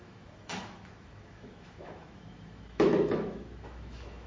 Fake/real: fake